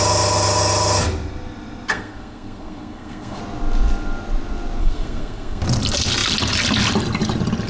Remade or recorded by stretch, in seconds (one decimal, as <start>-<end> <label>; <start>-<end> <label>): 0.0-1.9 recorded; 1.9-3.4 remade; 3.4-4.8 recorded; 4.8-5.6 remade; 5.6-7.7 recorded